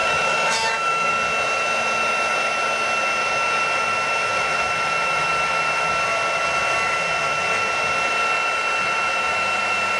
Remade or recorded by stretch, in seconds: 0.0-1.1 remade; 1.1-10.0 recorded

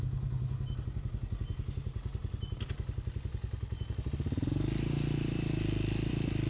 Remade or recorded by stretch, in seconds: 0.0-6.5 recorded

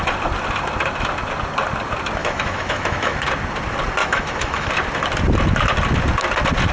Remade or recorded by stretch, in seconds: 0.0-2.2 recorded; 2.2-3.2 remade; 3.2-4.0 recorded; 4.0-4.7 remade; 4.7-6.7 recorded

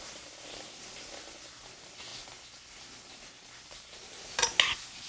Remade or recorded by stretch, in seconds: 0.0-5.1 recorded

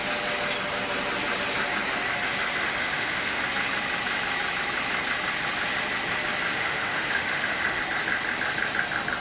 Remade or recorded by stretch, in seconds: 0.0-2.6 recorded; 2.6-3.4 remade; 3.4-6.5 recorded; 6.5-7.8 remade; 7.8-9.2 recorded